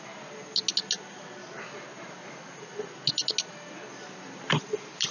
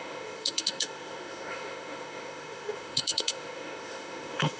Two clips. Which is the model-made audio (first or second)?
second